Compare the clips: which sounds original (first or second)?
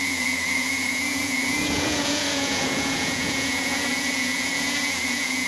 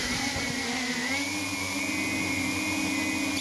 second